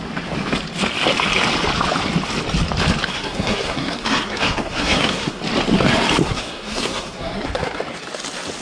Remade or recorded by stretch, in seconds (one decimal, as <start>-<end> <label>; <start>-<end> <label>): 0.0-3.1 recorded; 3.1-5.4 remade; 5.4-6.2 recorded; 6.2-7.8 remade; 7.8-8.6 recorded